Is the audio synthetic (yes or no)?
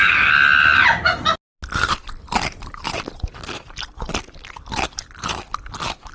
no